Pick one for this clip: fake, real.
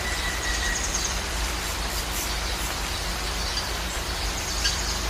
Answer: fake